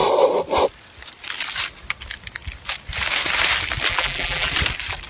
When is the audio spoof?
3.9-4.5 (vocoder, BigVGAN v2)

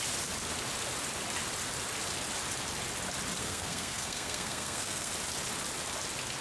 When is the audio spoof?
3.4-5.1 (codec, SNAC)

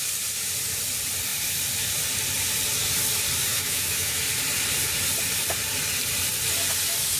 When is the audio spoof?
3.5-4.2 (autoencoder, DAC-VAE)

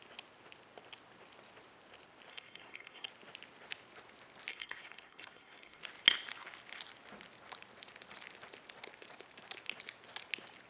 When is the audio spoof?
2.3-3.1 (codec, SNAC); 4.5-5.8

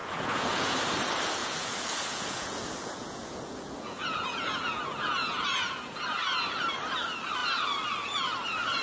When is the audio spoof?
0.0-0.9 (vocoder, Vocos); 1.4-6.0

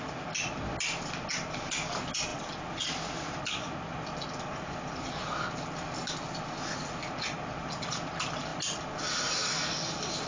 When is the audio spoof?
none

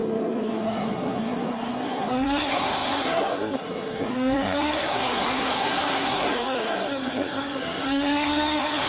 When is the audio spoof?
0.0-8.9 (codec, SNAC)

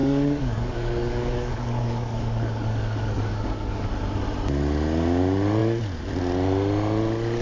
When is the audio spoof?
0.0-3.9 (codec, DAC)